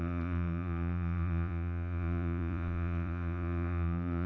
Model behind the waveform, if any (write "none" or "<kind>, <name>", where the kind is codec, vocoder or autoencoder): vocoder, Vocos